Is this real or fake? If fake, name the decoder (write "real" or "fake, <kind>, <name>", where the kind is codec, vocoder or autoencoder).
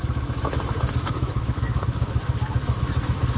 fake, autoencoder, DAC-VAE